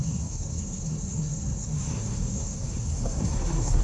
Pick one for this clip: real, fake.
fake